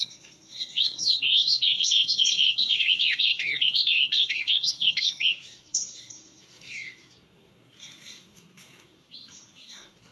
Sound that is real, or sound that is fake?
fake